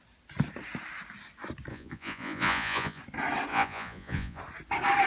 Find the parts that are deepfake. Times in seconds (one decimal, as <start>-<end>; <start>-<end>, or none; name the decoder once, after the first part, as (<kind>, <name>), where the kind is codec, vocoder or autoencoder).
1.7-3.0 (vocoder, Vocos); 3.5-4.4